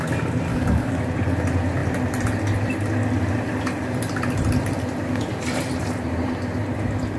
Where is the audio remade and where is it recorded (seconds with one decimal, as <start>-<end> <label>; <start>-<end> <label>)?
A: 0.0-0.5 recorded; 0.5-1.0 remade; 1.0-7.2 recorded